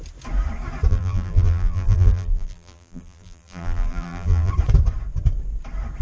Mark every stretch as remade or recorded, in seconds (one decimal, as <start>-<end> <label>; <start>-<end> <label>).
0.0-0.9 recorded; 0.9-4.5 remade; 4.5-6.0 recorded